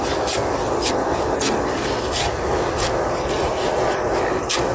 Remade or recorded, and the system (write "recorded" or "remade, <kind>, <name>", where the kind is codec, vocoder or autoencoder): recorded